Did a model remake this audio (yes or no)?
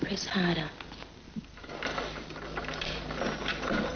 no